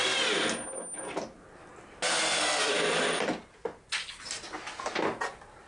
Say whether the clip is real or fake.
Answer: real